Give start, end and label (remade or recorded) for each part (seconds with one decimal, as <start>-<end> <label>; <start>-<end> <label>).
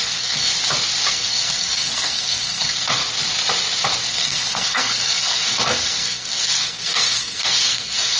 0.0-0.5 remade; 0.5-1.1 recorded; 1.1-3.0 remade; 3.0-4.1 recorded; 4.1-8.2 remade